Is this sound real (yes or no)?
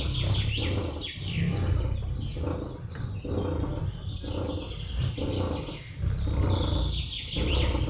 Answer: yes